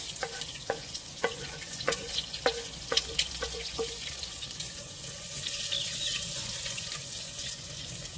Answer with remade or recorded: remade